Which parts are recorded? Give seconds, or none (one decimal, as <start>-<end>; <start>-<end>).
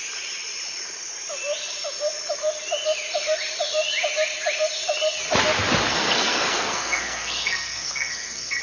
0.0-5.9